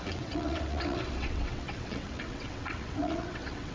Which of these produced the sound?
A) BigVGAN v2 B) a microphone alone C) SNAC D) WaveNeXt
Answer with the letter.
D